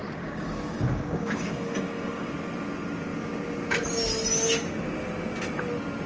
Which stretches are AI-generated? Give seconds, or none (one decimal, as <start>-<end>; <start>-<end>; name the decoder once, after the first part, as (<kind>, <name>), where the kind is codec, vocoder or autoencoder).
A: 0.0-2.3 (codec, DAC)